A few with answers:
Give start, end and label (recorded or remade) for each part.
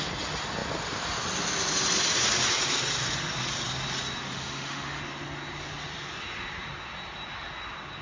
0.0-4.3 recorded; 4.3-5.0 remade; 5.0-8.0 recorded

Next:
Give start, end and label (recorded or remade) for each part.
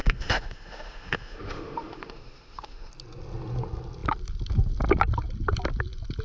0.0-2.9 remade; 2.9-6.2 recorded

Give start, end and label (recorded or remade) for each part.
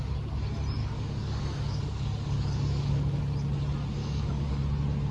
0.0-0.8 recorded; 0.8-3.2 remade; 3.2-4.0 recorded; 4.0-4.6 remade; 4.6-5.1 recorded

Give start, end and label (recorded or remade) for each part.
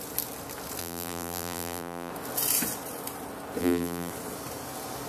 0.0-0.8 recorded; 0.8-2.1 remade; 2.1-3.6 recorded; 3.6-4.1 remade; 4.1-5.1 recorded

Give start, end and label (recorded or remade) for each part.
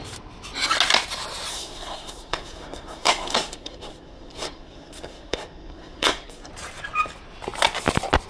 0.0-1.5 recorded; 1.5-6.5 remade; 6.5-8.3 recorded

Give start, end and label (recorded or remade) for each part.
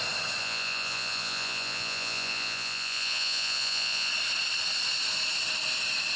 0.0-0.4 recorded; 0.4-4.1 remade; 4.1-6.2 recorded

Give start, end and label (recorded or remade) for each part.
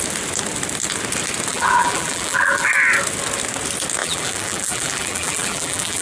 0.0-1.5 recorded; 1.5-2.7 remade; 2.7-4.0 recorded; 4.0-6.0 remade